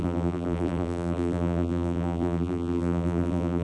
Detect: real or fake fake